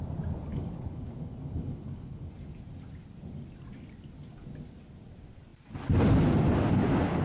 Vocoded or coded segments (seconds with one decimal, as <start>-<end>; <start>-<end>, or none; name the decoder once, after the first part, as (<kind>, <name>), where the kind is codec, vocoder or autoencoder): 0.5-2.3 (codec, HILCodec)